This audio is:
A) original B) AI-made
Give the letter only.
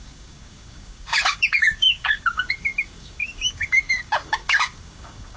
B